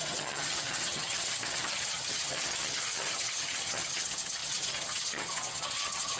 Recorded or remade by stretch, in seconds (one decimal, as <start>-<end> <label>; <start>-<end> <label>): 0.0-6.2 remade